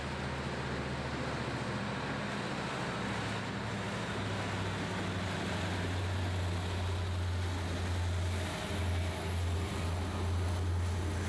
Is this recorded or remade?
recorded